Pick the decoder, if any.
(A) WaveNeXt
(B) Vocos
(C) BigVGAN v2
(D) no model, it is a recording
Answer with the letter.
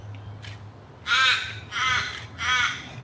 D